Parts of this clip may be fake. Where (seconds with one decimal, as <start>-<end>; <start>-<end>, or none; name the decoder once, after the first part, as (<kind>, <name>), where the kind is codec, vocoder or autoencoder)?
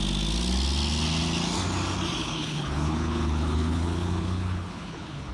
2.2-5.3 (codec, HILCodec)